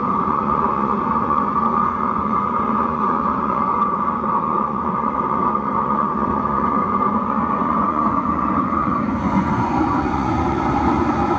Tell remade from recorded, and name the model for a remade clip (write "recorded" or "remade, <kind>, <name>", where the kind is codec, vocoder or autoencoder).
remade, vocoder, Vocos